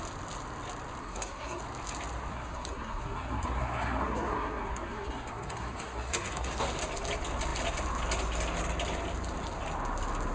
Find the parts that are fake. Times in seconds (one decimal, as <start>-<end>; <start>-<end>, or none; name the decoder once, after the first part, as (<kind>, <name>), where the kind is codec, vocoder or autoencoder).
1.0-1.6 (codec, SNAC); 2.3-6.5